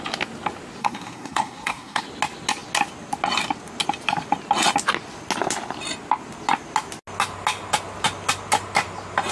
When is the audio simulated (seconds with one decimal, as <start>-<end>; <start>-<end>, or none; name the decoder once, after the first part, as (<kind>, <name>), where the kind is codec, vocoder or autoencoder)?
0.8-2.0 (codec, SNAC)